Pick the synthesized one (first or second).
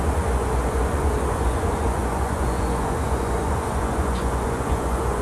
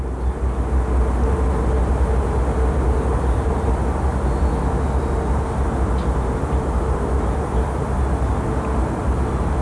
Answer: first